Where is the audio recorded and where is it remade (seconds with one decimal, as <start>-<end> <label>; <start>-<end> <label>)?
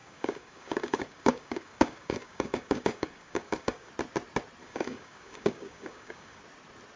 0.0-3.9 remade; 3.9-4.6 recorded; 4.6-6.4 remade; 6.4-7.0 recorded